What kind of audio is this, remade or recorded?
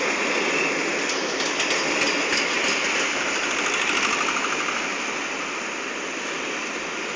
recorded